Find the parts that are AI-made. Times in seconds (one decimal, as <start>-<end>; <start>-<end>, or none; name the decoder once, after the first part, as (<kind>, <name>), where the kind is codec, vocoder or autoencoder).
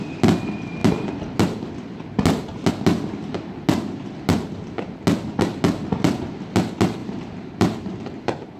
7.0-8.6 (vocoder, BigVGAN v2)